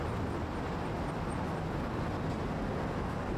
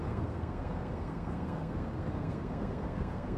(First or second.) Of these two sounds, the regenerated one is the second